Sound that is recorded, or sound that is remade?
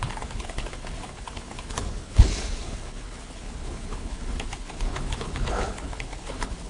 remade